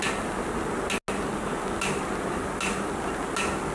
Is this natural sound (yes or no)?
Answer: yes